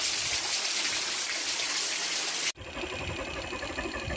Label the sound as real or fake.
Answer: real